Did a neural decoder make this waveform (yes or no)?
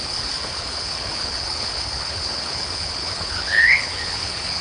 yes